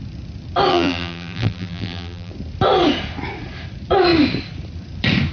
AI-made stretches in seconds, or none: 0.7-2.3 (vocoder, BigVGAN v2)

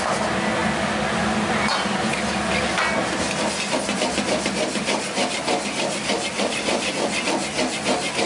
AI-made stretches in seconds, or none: none

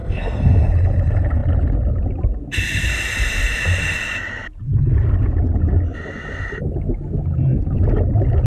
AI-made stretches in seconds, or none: 0.0-0.7 (codec, SNAC)

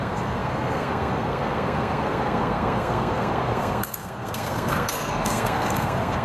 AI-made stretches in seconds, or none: 0.0-6.2 (codec, SNAC)

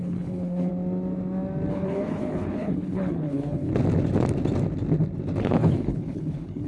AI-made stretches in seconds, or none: 0.0-0.7 (codec, HILCodec); 1.7-3.7; 5.4-6.7

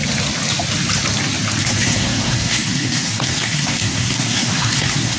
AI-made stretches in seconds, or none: 1.6-5.2 (codec, SNAC)

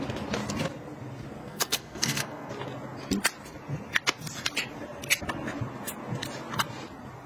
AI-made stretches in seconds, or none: 1.4-2.5 (codec, SNAC)